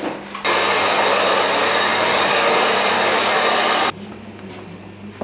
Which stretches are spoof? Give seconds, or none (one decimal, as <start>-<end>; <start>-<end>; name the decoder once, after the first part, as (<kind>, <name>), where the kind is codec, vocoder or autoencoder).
1.9-4.1 (codec, DAC)